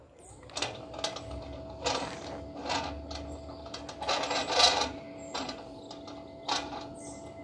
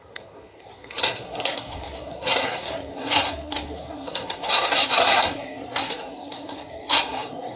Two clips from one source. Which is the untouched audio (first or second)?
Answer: first